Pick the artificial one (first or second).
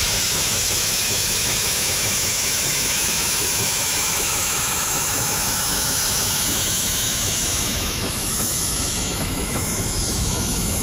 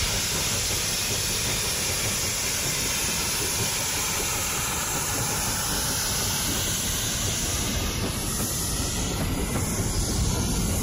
first